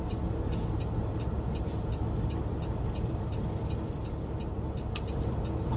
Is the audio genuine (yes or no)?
yes